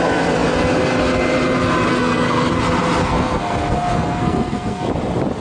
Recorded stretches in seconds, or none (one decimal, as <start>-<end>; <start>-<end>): 0.0-1.9; 2.5-3.0; 4.9-5.4